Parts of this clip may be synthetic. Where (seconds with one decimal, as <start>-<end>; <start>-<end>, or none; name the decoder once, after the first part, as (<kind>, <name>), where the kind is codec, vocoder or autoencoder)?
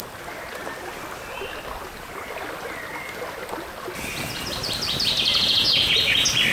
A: 5.3-5.9 (vocoder, Vocos)